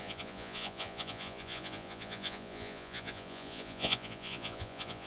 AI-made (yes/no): yes